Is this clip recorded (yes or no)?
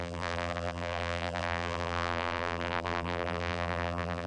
no